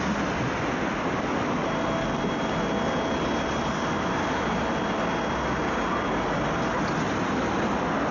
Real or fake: real